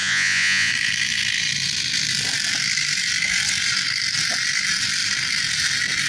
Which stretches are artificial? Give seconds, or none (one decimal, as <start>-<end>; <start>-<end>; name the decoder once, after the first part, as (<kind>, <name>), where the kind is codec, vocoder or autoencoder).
0.0-0.7 (vocoder, Vocos)